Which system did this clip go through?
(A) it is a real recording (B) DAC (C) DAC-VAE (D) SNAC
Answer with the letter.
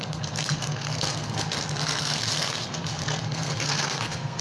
D